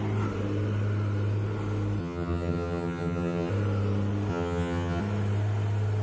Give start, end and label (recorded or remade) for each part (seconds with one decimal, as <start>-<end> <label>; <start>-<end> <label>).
0.0-2.0 recorded; 2.0-3.5 remade; 3.5-4.3 recorded; 4.3-5.0 remade; 5.0-6.0 recorded